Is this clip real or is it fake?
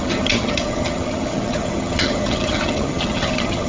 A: fake